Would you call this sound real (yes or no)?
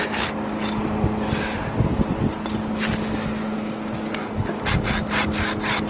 yes